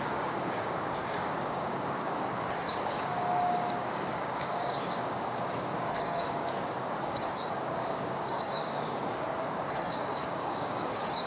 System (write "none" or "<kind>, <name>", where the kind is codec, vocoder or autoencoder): codec, DAC